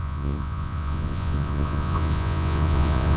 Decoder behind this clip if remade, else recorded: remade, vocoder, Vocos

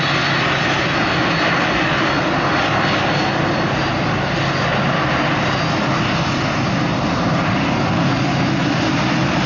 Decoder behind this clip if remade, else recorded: recorded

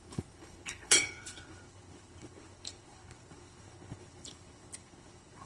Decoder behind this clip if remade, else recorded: remade, codec, HILCodec